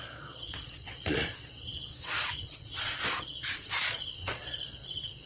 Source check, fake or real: fake